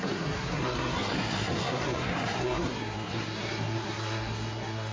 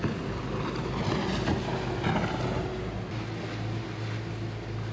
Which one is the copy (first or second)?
first